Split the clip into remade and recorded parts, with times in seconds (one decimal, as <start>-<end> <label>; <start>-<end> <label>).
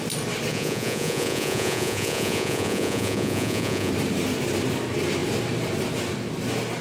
0.0-0.5 recorded; 0.5-3.9 remade; 3.9-6.8 recorded